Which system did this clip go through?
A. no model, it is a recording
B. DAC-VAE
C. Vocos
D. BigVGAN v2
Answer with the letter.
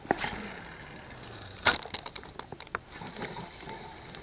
A